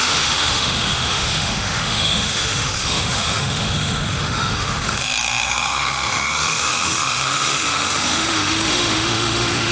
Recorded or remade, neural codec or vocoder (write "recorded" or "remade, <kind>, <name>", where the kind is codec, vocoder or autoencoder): remade, autoencoder, DAC-VAE